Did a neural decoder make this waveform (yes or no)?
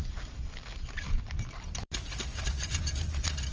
yes